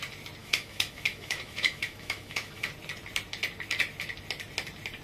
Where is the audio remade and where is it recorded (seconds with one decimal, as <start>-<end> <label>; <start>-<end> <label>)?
0.0-0.4 recorded; 0.4-2.7 remade; 2.7-5.0 recorded